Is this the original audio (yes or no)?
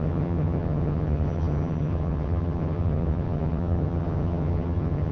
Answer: no